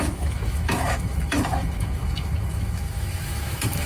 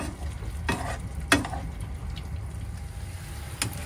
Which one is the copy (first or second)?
first